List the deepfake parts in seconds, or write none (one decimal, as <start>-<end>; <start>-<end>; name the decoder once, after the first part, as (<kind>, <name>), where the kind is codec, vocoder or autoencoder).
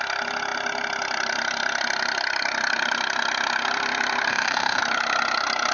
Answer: 4.3-4.8 (autoencoder, DAC-VAE)